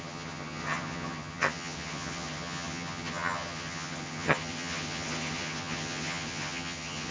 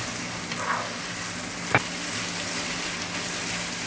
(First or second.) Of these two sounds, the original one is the second